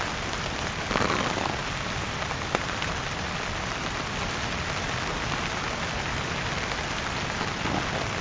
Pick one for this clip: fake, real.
real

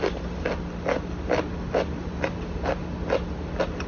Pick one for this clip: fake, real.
real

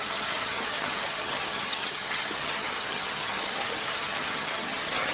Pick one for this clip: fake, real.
fake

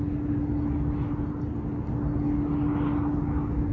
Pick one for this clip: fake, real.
real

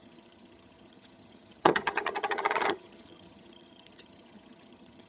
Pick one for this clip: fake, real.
fake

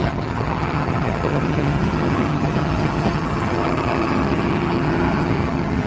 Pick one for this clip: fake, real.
fake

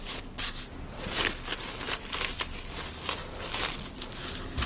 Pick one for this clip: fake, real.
real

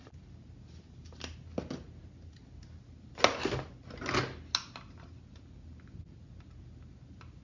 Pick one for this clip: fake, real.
real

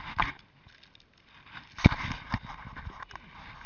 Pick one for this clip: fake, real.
real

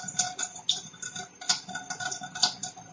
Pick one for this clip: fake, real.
real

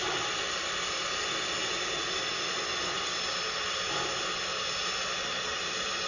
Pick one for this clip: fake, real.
real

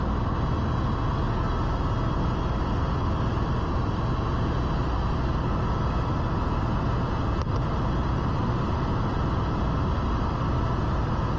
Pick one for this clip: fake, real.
real